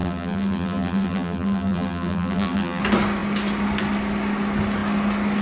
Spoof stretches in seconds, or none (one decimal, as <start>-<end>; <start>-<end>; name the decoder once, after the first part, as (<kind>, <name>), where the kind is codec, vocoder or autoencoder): 0.0-2.8 (vocoder, BigVGAN v2)